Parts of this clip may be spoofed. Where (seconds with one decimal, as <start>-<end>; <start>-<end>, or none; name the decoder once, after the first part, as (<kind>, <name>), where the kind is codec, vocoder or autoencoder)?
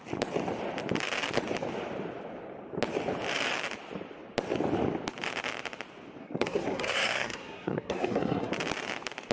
6.2-8.5 (codec, SNAC)